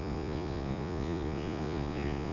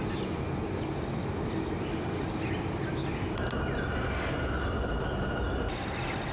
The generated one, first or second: first